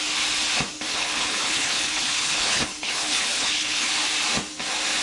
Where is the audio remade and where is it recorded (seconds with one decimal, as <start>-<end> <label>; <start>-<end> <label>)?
0.0-0.9 recorded; 0.9-3.9 remade; 3.9-5.0 recorded